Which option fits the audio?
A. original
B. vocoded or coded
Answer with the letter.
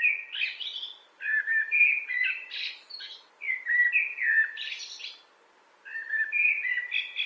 B